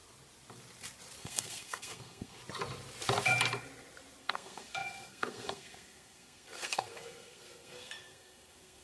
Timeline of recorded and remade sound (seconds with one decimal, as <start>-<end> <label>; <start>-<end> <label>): 0.0-1.2 recorded; 1.2-2.4 remade; 2.4-4.2 recorded; 4.2-8.8 remade